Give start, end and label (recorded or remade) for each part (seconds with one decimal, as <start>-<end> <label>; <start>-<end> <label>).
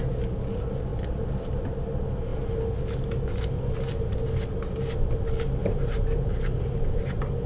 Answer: 0.0-5.6 recorded; 5.6-7.5 remade